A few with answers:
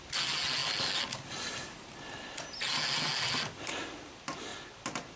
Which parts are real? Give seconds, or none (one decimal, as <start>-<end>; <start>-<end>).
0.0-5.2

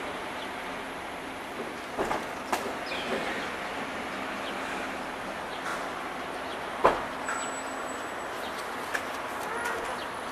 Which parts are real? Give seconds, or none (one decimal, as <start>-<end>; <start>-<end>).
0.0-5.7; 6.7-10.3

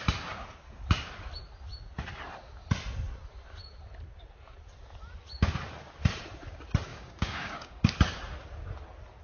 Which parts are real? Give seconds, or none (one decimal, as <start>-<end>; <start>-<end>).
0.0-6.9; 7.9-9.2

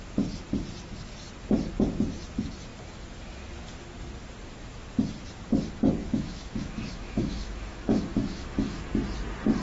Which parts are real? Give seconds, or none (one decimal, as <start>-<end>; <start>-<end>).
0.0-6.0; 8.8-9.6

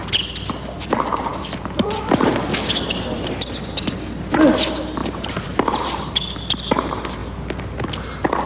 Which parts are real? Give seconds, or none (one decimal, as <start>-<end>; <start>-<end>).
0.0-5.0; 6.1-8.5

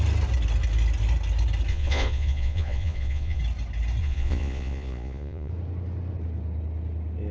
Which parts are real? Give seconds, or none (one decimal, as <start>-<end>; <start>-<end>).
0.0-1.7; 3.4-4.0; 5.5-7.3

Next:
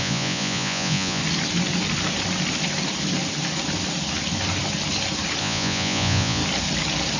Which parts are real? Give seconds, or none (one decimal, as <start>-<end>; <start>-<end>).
1.2-5.4; 6.4-7.2